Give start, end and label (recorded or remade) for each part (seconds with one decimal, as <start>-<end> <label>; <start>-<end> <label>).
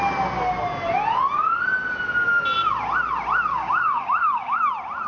0.0-3.5 recorded; 3.5-4.6 remade; 4.6-5.1 recorded